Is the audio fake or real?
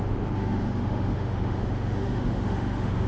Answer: fake